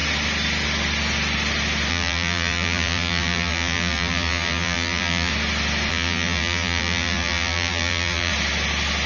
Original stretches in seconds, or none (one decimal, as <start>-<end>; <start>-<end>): 0.0-1.9; 5.3-5.9; 8.3-9.1